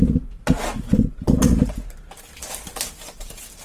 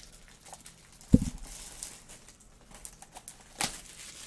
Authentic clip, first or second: second